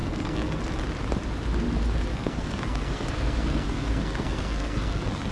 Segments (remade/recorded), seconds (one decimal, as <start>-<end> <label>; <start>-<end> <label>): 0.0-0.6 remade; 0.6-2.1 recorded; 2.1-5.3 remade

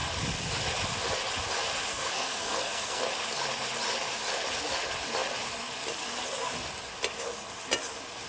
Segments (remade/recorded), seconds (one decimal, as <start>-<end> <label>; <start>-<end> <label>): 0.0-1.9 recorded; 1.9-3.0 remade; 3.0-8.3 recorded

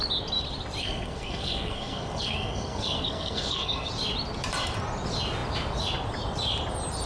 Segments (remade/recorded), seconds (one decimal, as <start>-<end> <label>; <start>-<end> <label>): 0.0-0.8 recorded; 0.8-3.9 remade; 3.9-7.1 recorded

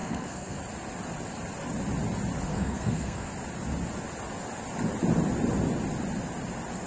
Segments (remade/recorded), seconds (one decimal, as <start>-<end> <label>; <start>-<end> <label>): 0.0-0.6 remade; 0.6-2.5 recorded; 2.5-3.3 remade; 3.3-6.9 recorded

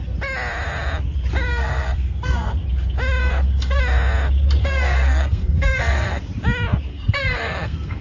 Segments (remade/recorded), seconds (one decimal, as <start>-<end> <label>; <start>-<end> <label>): 0.0-1.5 recorded; 1.5-2.5 remade; 2.5-3.2 recorded; 3.2-3.8 remade; 3.8-4.6 recorded; 4.6-6.2 remade; 6.2-6.9 recorded; 6.9-8.0 remade

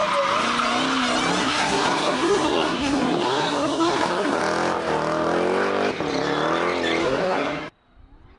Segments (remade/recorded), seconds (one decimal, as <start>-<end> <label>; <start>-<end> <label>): 0.0-1.4 recorded; 1.4-4.4 remade; 4.4-7.0 recorded; 7.0-7.7 remade; 7.7-8.4 recorded

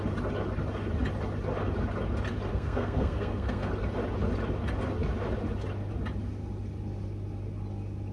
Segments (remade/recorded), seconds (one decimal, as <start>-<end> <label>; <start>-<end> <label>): 0.0-2.5 recorded; 2.5-3.7 remade; 3.7-8.1 recorded

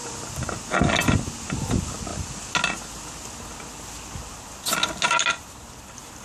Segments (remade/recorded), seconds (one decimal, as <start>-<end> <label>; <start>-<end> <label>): 0.0-6.2 recorded